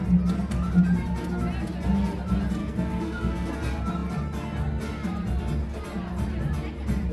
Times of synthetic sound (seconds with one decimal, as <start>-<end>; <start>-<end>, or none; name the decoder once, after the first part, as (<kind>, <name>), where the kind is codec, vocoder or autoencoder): 2.6-3.5 (codec, SNAC)